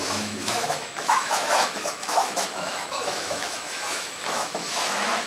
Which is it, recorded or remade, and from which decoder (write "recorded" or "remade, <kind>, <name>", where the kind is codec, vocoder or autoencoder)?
remade, autoencoder, DAC-VAE